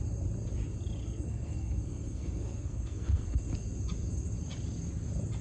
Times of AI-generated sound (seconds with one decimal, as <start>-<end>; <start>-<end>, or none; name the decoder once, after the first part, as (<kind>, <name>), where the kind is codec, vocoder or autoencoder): 1.0-3.4 (codec, SNAC)